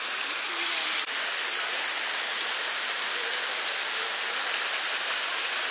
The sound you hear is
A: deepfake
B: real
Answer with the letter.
B